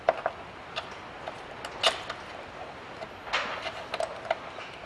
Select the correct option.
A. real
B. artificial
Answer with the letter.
A